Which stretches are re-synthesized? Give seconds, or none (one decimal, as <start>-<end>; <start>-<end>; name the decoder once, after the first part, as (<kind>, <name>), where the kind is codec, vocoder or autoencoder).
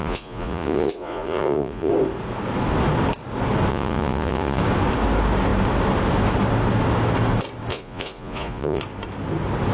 0.0-1.9 (vocoder, Vocos); 3.7-4.6; 7.7-8.8